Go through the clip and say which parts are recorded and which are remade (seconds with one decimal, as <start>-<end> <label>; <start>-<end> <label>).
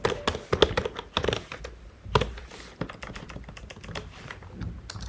0.0-5.1 recorded